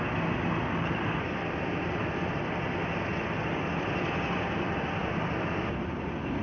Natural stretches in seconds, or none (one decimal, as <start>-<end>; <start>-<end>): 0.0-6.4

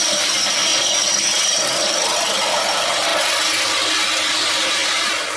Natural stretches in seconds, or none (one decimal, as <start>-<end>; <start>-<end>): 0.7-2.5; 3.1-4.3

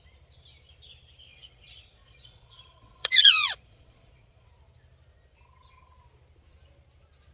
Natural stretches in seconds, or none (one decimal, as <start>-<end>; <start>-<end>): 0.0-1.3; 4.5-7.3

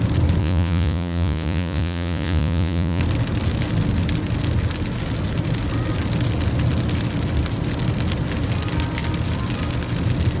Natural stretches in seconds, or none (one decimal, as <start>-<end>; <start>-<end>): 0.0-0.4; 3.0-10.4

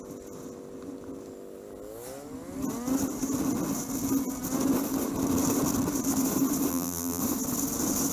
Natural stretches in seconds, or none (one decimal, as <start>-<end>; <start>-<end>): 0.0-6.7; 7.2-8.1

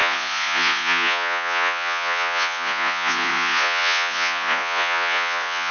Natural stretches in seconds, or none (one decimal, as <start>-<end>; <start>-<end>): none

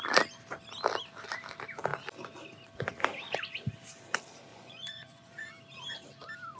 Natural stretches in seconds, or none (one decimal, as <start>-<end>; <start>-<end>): 0.0-4.5; 5.5-6.6